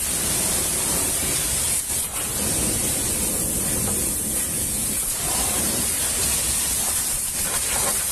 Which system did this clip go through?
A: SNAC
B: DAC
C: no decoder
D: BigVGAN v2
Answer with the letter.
C